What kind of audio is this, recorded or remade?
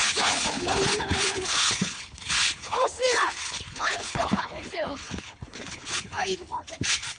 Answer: remade